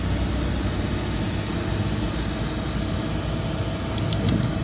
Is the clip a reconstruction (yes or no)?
no